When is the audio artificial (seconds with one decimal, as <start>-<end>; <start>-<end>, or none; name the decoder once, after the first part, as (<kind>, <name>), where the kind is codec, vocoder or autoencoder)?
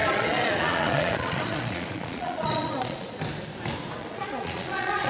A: 0.0-3.1 (vocoder, Vocos); 4.0-5.1